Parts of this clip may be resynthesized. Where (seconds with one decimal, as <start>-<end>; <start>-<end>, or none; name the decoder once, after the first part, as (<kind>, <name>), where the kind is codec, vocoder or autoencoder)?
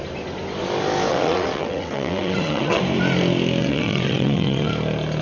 1.1-2.8 (vocoder, WaveNeXt); 3.6-4.7